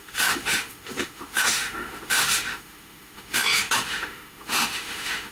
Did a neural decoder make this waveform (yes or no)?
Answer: yes